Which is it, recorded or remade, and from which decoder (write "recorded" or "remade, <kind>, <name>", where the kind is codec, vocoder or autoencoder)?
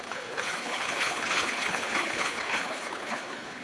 remade, codec, HILCodec